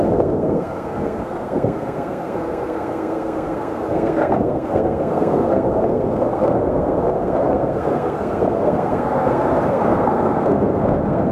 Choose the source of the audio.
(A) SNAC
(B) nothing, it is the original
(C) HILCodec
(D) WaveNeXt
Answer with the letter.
A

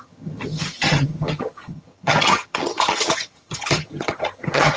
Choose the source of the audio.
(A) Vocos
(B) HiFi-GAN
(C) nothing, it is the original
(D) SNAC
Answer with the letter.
B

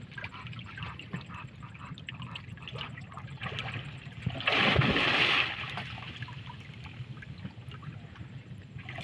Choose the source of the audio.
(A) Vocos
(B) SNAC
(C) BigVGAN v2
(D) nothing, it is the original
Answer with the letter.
D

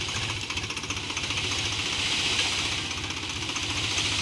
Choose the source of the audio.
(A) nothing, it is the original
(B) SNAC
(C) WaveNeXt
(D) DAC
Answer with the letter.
A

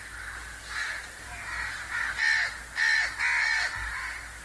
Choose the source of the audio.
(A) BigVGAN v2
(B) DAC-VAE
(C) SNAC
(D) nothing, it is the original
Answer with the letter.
D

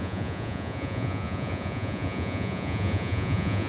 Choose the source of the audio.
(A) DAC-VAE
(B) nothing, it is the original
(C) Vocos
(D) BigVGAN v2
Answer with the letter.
C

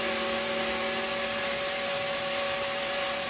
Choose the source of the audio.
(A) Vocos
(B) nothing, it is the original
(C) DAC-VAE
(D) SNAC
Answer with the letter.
B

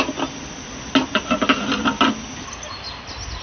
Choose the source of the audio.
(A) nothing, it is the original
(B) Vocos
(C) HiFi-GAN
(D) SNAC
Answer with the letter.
A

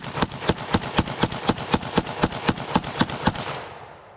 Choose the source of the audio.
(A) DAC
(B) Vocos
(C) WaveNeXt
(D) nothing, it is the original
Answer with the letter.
D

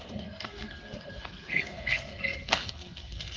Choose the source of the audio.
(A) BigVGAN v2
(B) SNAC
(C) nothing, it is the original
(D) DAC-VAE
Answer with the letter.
B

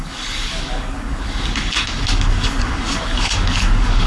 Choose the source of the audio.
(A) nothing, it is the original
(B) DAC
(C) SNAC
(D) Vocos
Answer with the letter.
B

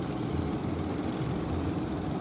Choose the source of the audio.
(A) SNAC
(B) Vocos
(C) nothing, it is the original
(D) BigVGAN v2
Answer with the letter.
C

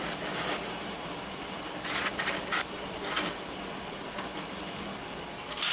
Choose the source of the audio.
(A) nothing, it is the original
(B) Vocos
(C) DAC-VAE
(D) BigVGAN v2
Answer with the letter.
A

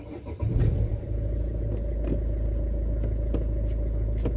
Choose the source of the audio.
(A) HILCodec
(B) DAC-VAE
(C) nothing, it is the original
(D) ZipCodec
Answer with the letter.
C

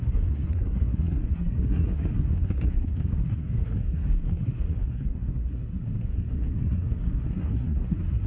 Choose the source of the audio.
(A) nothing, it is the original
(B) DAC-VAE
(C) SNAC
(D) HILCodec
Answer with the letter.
C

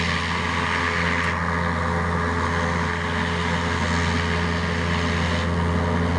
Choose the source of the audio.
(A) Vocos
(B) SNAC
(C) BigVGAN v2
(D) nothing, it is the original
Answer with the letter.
D